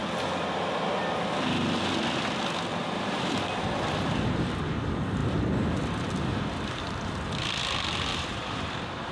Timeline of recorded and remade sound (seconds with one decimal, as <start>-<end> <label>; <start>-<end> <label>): 0.0-2.7 recorded; 2.7-3.3 remade; 3.3-8.1 recorded; 8.1-9.1 remade